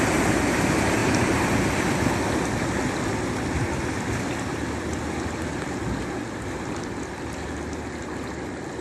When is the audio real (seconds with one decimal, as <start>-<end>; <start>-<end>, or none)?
0.0-8.8